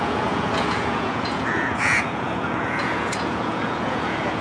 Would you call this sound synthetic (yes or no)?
yes